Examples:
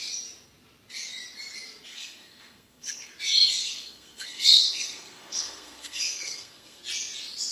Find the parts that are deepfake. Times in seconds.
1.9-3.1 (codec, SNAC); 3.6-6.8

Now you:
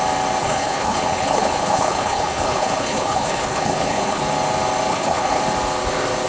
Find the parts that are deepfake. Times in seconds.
0.4-4.2 (codec, HILCodec); 4.9-5.4

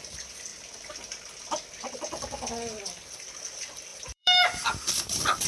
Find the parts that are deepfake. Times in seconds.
0.0-0.5 (vocoder, BigVGAN v2); 2.8-5.5

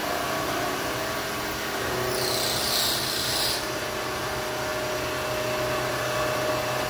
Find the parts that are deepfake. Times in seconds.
none